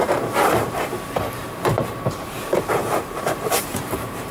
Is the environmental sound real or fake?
fake